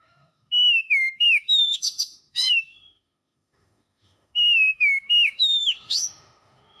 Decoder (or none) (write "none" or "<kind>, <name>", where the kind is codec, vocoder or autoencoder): autoencoder, DAC-VAE